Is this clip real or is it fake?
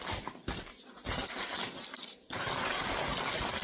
real